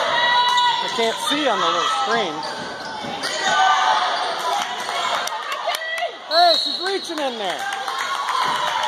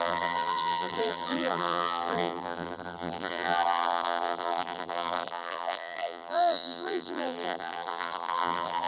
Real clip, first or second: first